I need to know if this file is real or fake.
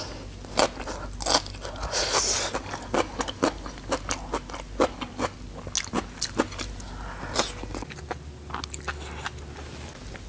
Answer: real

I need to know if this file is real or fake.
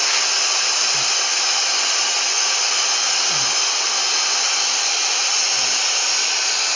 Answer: real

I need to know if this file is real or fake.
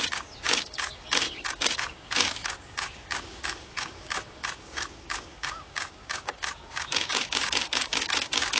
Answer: fake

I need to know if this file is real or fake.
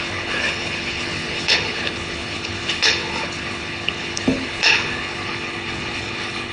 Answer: fake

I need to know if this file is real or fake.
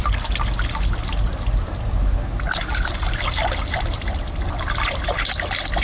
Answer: real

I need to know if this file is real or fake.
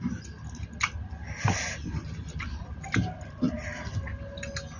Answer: fake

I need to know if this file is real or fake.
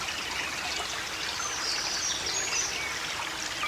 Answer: real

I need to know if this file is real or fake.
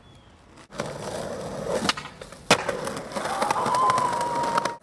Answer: real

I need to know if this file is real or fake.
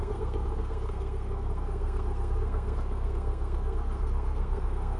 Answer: fake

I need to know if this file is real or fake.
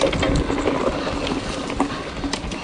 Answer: real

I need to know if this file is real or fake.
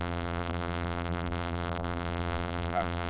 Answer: fake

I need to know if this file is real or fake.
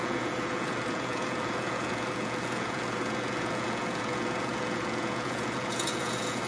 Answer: fake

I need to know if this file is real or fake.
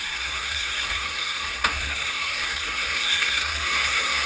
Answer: fake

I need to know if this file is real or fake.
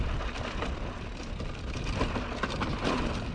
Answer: real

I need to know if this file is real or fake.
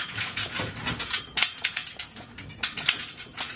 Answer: fake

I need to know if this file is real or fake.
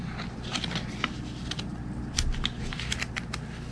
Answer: real